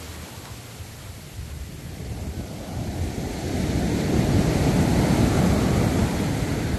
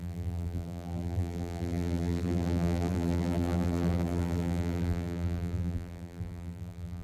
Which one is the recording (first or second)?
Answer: first